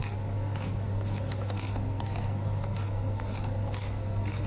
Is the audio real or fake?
fake